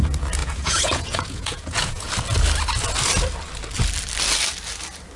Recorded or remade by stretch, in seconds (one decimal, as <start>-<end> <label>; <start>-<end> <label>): 0.0-0.4 recorded; 0.4-2.1 remade; 2.1-5.2 recorded